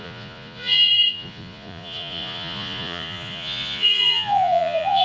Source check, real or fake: fake